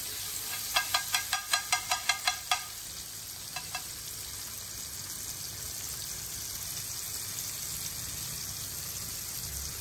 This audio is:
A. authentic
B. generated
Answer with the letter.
A